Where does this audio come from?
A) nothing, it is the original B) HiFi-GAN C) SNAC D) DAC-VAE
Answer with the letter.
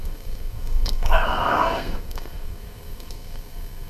C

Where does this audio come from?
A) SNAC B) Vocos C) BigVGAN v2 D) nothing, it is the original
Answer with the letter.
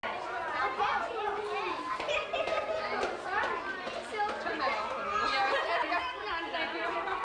D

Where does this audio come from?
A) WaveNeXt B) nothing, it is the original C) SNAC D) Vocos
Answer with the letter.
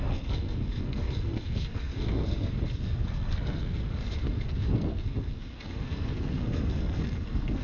C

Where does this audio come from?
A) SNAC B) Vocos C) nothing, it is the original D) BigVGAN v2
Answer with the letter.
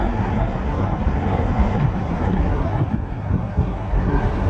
A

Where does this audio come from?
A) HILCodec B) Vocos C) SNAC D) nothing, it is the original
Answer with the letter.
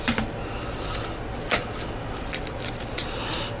D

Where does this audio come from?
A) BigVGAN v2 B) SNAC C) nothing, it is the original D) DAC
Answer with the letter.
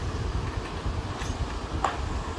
C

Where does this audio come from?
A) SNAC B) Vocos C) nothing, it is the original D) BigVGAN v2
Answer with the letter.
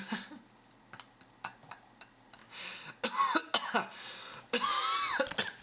C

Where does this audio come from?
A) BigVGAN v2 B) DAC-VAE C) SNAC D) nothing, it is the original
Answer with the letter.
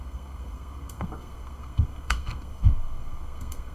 C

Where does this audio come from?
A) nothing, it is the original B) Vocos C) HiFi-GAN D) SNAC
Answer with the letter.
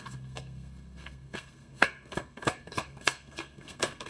D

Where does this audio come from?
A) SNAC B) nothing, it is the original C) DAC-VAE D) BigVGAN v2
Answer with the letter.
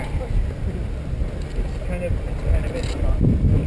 B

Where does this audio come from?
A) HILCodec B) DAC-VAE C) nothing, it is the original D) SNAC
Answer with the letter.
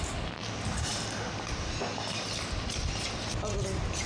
C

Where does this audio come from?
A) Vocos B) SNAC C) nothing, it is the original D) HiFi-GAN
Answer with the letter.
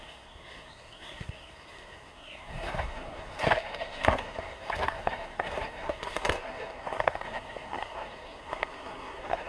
B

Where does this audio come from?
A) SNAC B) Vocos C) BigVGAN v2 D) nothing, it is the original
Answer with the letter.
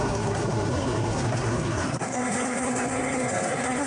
A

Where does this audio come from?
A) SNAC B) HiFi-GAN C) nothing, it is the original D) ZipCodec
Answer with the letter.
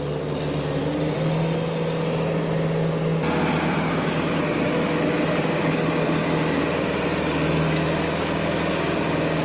C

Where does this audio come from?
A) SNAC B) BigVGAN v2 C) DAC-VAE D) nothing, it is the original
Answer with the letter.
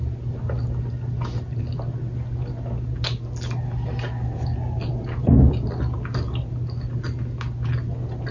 D